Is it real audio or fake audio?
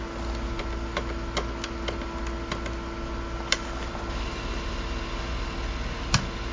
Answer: real